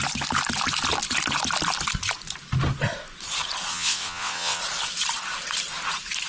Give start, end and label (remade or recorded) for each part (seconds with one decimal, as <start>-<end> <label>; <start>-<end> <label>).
0.0-3.7 recorded; 3.7-4.6 remade; 4.6-6.3 recorded

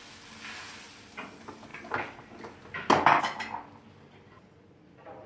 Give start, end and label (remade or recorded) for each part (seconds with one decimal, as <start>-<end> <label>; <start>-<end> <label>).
0.0-5.3 recorded

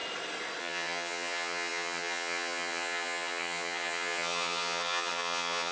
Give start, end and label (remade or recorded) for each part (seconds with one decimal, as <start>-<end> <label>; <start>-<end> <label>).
0.0-0.6 recorded; 0.6-5.7 remade

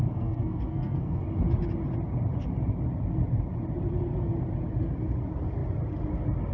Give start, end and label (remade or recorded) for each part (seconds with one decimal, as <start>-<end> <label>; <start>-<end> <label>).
0.0-1.2 remade; 1.2-6.5 recorded

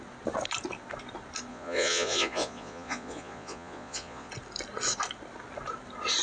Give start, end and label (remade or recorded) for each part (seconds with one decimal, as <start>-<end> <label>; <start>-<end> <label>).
0.0-1.5 recorded; 1.5-4.3 remade; 4.3-6.2 recorded

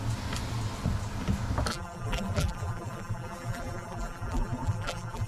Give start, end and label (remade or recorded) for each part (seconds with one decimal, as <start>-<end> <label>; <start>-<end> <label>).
0.0-1.7 recorded; 1.7-5.3 remade

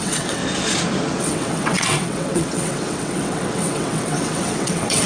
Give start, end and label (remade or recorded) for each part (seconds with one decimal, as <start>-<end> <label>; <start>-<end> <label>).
0.0-0.4 remade; 0.4-1.2 recorded; 1.2-5.1 remade

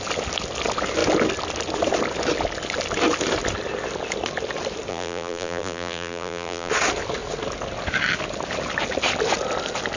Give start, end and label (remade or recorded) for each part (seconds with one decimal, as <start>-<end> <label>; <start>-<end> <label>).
0.0-4.9 recorded; 4.9-6.7 remade; 6.7-10.0 recorded